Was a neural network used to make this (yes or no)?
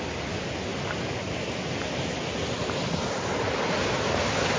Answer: no